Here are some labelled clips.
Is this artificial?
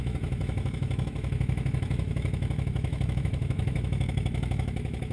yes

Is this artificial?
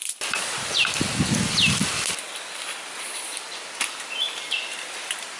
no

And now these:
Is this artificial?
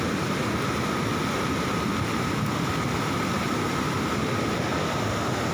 no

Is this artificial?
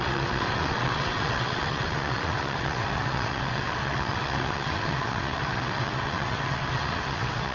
yes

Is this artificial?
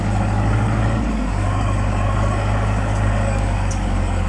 yes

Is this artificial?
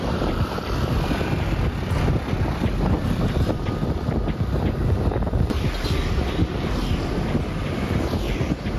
yes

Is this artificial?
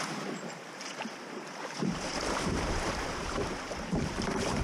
yes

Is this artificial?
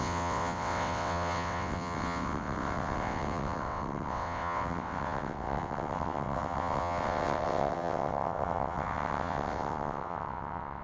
yes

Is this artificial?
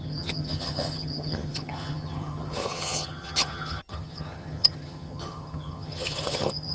yes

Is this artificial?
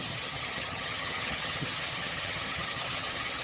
yes